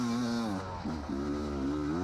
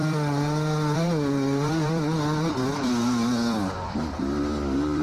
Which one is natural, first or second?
first